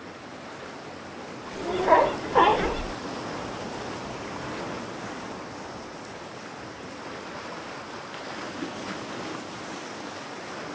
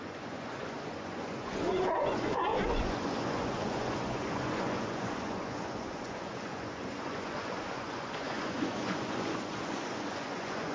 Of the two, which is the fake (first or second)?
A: second